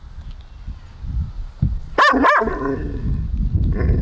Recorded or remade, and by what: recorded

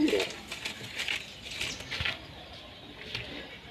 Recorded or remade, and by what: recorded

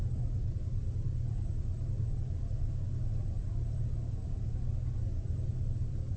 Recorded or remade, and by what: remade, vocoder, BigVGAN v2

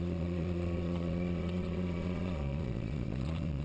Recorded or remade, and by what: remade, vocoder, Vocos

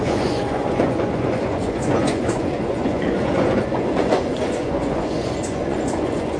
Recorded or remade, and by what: remade, vocoder, Vocos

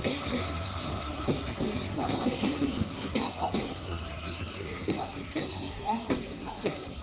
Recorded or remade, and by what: remade, codec, SNAC